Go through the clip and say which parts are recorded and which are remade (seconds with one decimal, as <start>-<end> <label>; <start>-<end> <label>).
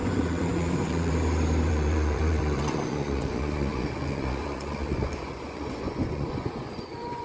0.0-1.1 remade; 1.1-1.7 recorded; 1.7-7.2 remade